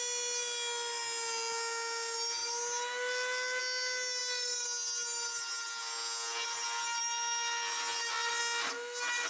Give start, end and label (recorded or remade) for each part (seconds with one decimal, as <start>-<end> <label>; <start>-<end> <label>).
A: 0.0-9.3 recorded